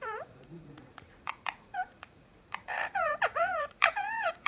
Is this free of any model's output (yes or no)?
no